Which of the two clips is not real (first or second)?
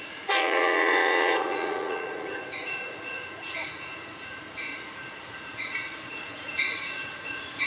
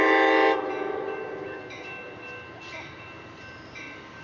first